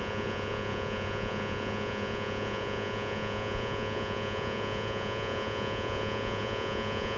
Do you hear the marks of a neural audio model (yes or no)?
yes